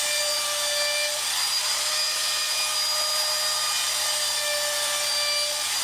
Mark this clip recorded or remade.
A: recorded